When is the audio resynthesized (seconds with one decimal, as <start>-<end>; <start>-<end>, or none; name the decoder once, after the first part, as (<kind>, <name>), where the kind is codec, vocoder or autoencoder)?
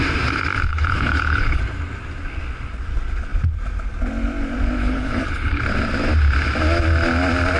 0.7-1.6 (codec, HILCodec); 4.8-5.6